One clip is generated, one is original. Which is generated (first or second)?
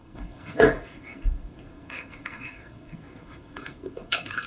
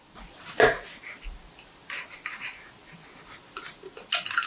first